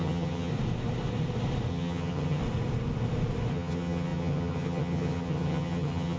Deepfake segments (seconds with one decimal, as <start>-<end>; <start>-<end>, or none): 0.0-0.5; 1.7-2.4; 3.5-6.2